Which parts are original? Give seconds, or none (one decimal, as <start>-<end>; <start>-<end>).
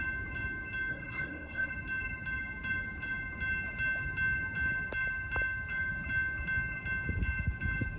0.0-0.9; 1.7-8.0